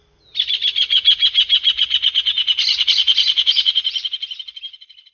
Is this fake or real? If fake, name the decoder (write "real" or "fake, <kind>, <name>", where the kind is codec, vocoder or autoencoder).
real